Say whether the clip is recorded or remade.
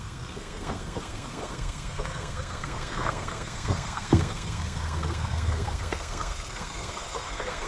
remade